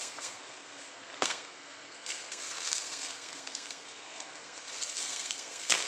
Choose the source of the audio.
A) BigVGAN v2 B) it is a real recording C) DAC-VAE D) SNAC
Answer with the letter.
D